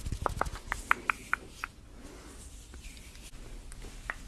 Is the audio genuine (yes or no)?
yes